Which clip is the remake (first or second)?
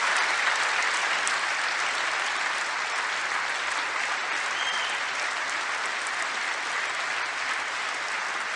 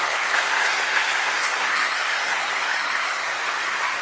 second